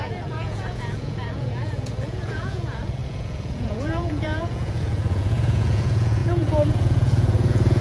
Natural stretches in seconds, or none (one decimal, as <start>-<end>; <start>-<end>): none